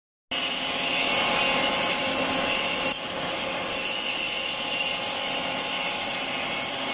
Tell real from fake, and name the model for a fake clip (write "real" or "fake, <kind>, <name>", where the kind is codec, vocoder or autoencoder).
real